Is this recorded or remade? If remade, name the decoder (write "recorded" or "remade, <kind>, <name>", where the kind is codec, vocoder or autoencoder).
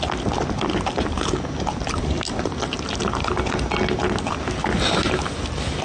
recorded